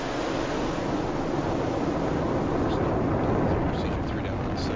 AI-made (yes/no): no